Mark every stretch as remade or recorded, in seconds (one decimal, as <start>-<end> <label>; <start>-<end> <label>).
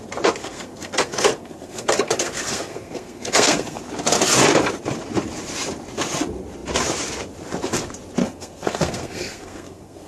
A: 0.0-0.4 recorded; 0.4-3.8 remade; 3.8-8.2 recorded; 8.2-10.1 remade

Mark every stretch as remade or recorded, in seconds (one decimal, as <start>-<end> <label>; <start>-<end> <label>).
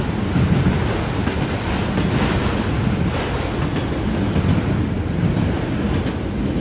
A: 0.0-6.6 recorded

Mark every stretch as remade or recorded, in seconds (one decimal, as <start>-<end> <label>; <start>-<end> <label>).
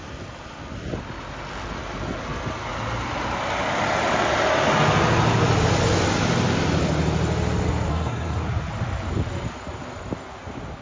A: 0.0-7.9 recorded; 7.9-8.4 remade; 8.4-10.8 recorded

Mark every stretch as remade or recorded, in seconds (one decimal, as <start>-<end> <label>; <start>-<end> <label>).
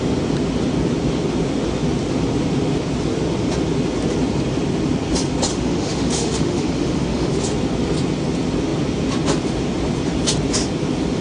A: 0.0-5.5 recorded; 5.5-7.4 remade; 7.4-11.2 recorded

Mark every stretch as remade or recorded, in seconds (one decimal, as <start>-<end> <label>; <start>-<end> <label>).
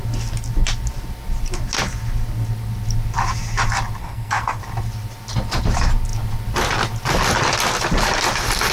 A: 0.0-4.0 recorded; 4.0-4.6 remade; 4.6-8.7 recorded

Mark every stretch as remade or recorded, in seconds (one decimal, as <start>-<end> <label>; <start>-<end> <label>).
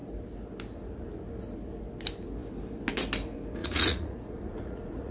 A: 0.0-3.6 recorded; 3.6-5.1 remade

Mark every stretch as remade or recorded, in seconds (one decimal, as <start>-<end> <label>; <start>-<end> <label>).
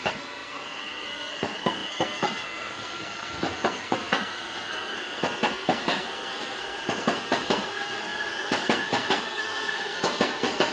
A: 0.0-10.7 remade